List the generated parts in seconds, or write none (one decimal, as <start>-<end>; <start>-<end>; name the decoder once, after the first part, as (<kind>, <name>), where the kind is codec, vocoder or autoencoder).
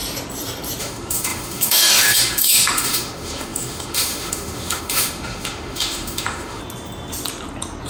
0.8-6.6 (autoencoder, DAC-VAE)